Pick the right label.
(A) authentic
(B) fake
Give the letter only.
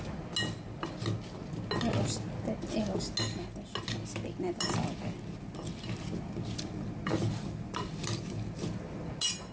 A